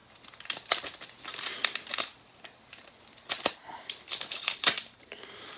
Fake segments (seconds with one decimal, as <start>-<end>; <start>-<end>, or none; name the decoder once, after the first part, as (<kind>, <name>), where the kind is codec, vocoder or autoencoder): 1.4-1.9 (vocoder, BigVGAN v2); 3.0-5.6

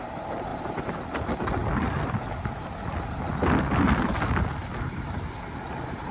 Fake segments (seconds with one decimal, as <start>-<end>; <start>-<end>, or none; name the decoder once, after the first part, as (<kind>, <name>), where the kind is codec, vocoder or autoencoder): 1.6-5.3 (vocoder, BigVGAN v2)

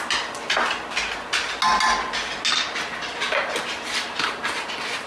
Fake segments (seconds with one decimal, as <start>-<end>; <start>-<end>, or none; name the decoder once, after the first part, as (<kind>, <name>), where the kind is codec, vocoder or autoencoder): none

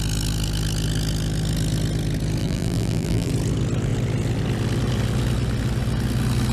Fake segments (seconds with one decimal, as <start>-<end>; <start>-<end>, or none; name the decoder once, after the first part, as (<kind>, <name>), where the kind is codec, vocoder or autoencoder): 2.4-3.3 (vocoder, BigVGAN v2)

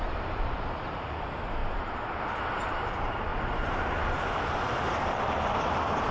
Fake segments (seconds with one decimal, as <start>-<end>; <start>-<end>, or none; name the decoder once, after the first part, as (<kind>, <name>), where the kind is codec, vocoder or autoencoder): 1.6-2.2 (vocoder, BigVGAN v2); 3.3-3.9

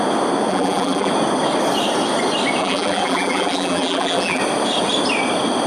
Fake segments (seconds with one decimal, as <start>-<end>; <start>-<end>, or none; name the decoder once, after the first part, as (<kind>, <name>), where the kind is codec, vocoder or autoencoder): 0.5-1.1 (vocoder, BigVGAN v2); 2.6-4.4

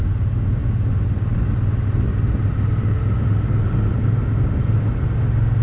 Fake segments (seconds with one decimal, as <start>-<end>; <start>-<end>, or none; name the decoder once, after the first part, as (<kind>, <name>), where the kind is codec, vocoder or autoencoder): none

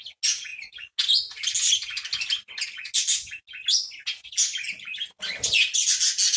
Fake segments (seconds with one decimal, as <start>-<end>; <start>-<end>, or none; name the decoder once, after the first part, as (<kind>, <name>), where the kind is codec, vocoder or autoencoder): none